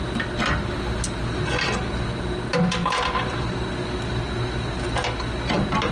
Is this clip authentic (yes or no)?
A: yes